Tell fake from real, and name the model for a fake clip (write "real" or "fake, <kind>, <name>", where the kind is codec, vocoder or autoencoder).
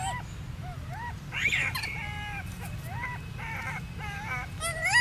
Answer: real